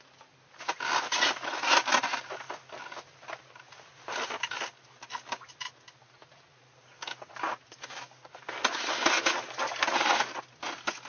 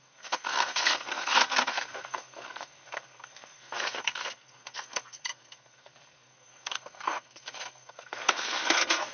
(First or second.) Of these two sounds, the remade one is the second